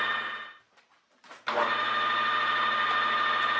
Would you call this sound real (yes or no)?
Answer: yes